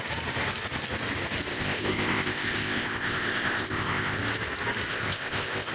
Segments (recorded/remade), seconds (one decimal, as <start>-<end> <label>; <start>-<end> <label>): 0.0-1.5 recorded; 1.5-4.2 remade; 4.2-4.9 recorded; 4.9-5.7 remade